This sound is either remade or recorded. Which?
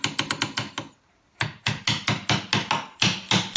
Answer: recorded